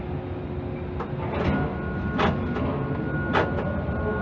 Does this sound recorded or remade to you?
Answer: recorded